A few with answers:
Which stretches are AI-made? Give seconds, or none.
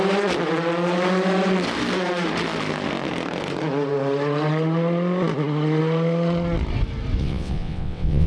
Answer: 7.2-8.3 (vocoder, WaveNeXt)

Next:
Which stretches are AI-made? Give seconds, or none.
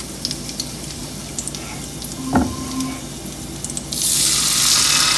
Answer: none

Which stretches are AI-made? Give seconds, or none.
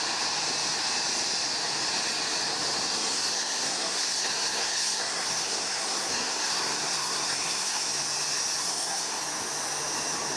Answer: 2.8-7.9 (codec, SNAC); 8.6-9.2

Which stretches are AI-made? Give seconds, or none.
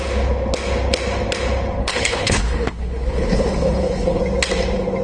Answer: 1.8-4.2 (codec, HILCodec)